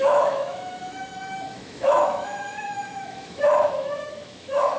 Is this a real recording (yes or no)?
no